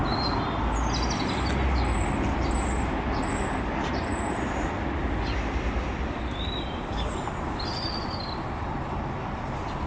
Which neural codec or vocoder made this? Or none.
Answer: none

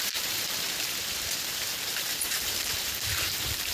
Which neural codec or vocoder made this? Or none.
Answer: vocoder, BigVGAN v2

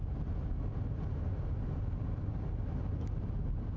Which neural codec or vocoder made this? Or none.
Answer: none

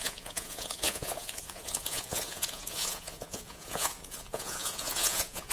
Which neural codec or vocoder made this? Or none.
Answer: vocoder, Vocos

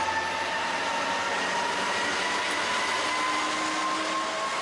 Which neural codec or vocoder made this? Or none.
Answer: none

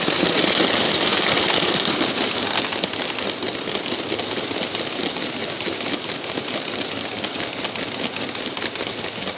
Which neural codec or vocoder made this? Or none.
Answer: none